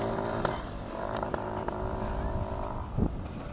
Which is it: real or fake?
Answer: fake